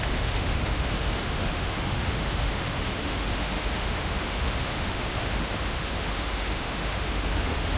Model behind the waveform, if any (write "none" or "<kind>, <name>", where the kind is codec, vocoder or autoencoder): autoencoder, DAC-VAE